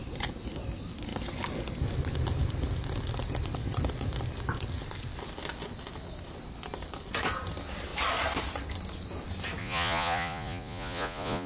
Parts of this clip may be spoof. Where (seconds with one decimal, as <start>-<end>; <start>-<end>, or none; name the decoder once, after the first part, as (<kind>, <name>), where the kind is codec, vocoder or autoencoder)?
9.6-11.5 (vocoder, Vocos)